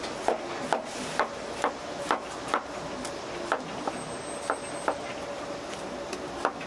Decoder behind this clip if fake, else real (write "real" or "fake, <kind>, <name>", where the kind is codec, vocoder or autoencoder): real